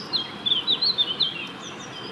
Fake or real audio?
real